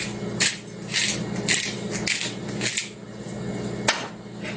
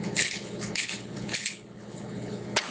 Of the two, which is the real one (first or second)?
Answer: first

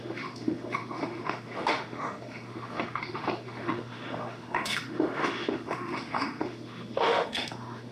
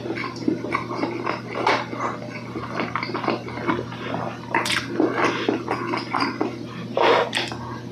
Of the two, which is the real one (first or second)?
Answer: second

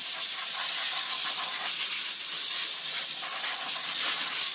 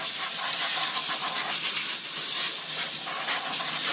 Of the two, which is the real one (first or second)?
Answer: second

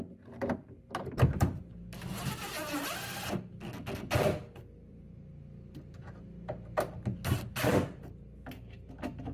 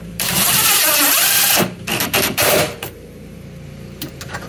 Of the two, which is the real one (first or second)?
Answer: first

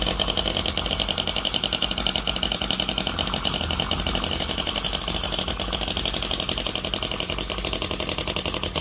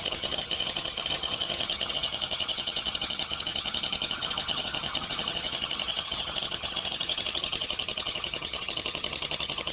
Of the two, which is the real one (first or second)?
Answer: first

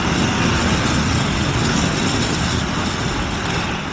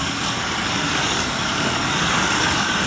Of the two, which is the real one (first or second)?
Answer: first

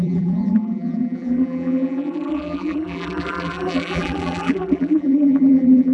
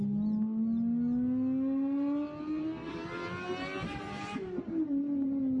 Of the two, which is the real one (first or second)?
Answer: second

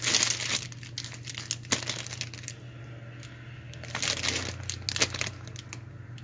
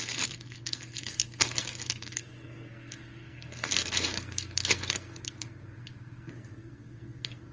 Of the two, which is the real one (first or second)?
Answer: first